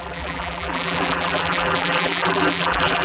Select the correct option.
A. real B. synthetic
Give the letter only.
B